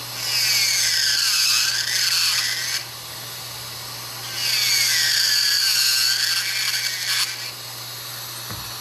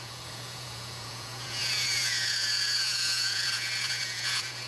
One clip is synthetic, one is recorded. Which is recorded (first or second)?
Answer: first